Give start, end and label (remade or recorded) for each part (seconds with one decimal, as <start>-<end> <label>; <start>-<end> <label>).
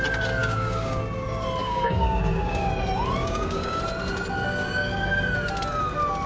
0.0-0.4 recorded; 0.4-1.0 remade; 1.0-1.6 recorded; 1.6-2.7 remade; 2.7-3.2 recorded; 3.2-3.8 remade; 3.8-4.6 recorded; 4.6-5.2 remade; 5.2-6.3 recorded